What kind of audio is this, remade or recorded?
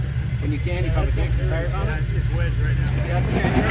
recorded